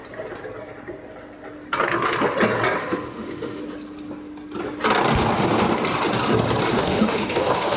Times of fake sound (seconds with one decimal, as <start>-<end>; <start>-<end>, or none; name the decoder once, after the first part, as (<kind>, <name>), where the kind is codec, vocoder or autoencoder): 2.8-3.6 (autoencoder, DAC-VAE); 6.7-7.8